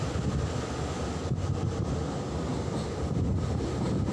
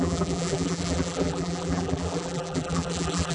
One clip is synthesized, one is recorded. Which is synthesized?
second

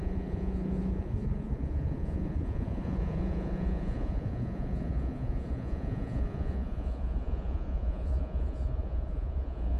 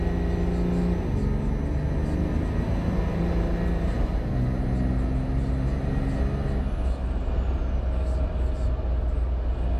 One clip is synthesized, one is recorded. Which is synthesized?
first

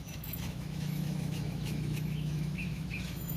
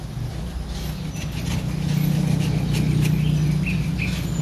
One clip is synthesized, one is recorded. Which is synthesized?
first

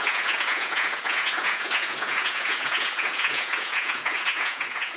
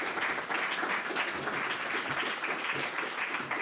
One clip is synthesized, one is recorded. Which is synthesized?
first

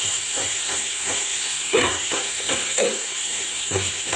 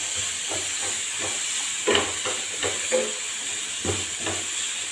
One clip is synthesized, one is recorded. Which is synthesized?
first